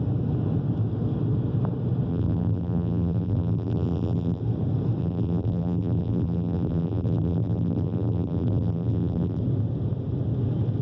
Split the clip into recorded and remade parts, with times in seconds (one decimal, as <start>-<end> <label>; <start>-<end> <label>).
0.0-2.1 recorded; 2.1-4.4 remade; 4.4-5.0 recorded; 5.0-9.4 remade; 9.4-10.8 recorded